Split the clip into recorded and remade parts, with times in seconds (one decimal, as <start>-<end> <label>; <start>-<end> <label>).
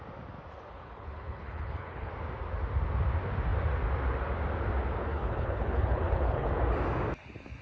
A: 0.0-0.5 recorded; 0.5-2.1 remade; 2.1-5.1 recorded; 5.1-6.5 remade; 6.5-7.6 recorded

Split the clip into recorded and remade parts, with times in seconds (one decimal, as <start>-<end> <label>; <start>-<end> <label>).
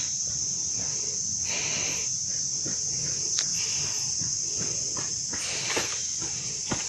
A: 0.0-6.9 recorded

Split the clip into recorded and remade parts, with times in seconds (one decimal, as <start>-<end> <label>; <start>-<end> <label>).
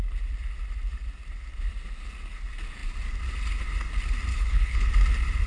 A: 0.0-4.3 recorded; 4.3-4.9 remade; 4.9-5.5 recorded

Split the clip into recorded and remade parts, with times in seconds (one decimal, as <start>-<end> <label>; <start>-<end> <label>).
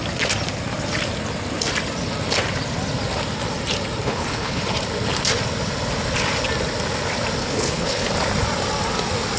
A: 0.0-4.0 recorded; 4.0-4.6 remade; 4.6-7.4 recorded; 7.4-8.1 remade; 8.1-9.4 recorded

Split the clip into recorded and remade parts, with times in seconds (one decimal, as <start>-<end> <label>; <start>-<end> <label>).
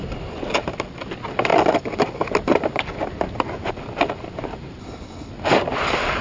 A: 0.0-4.8 recorded; 4.8-5.3 remade; 5.3-6.2 recorded